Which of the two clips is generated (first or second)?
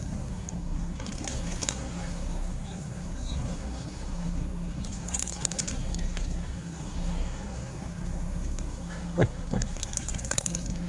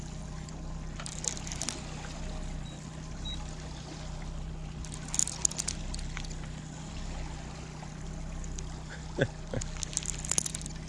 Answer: first